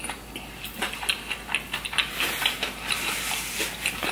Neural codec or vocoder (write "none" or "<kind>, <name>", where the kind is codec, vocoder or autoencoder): none